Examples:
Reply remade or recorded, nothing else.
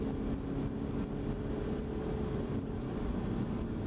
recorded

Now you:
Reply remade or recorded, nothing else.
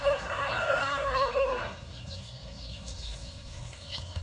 remade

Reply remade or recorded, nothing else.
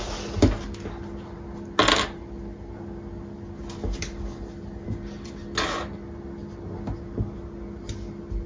recorded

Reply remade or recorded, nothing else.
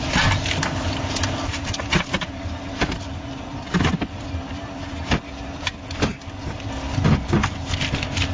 recorded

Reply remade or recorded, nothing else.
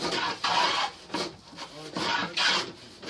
recorded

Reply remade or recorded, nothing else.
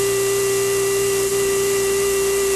recorded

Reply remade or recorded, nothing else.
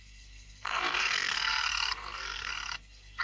remade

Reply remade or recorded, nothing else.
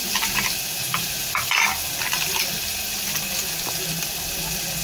recorded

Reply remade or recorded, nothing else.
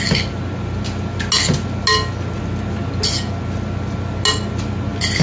recorded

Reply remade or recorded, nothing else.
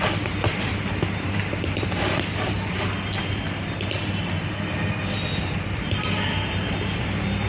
recorded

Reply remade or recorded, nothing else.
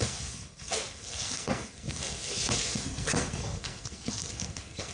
remade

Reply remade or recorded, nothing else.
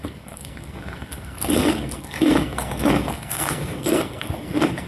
remade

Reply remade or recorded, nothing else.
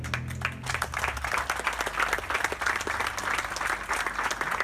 recorded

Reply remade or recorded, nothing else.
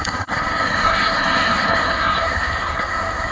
remade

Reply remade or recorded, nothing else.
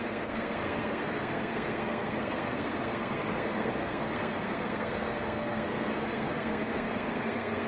remade